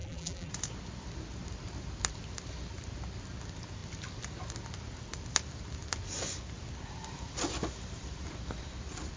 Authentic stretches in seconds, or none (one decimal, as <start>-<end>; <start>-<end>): 0.5-9.2